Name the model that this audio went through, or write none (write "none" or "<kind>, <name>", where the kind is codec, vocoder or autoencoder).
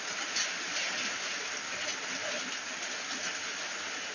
none